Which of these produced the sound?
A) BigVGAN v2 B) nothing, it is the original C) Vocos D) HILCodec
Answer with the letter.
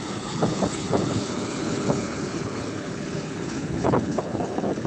D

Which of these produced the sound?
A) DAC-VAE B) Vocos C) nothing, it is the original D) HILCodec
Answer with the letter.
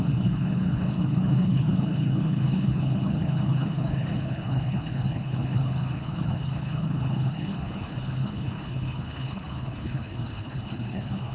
D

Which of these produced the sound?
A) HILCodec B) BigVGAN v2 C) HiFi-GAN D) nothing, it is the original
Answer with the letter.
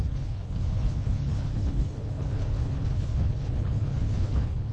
A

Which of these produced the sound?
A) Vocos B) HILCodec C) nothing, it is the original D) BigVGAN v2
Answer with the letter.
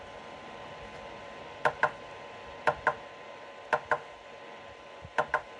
C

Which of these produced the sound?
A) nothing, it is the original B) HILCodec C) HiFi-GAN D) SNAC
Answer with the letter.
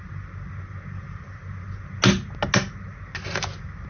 A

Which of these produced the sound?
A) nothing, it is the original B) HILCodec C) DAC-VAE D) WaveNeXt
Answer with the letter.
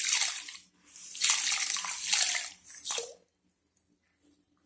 A